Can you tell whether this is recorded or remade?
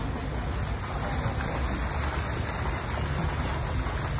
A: recorded